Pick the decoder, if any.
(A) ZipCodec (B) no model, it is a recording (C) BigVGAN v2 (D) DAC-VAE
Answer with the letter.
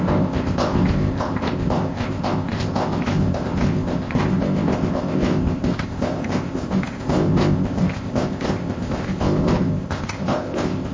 A